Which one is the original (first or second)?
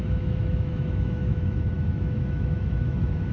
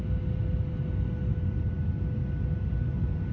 second